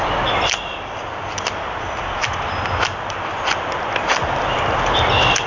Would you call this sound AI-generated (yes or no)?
yes